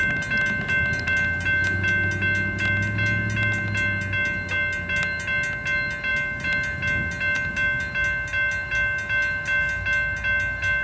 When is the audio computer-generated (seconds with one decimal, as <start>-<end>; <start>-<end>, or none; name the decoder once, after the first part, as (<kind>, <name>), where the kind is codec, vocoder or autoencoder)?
none